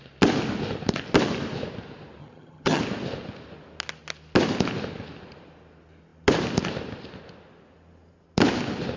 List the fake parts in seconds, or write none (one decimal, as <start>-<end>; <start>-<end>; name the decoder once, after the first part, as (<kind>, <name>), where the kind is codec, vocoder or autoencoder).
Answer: 2.2-2.8 (vocoder, HiFi-GAN)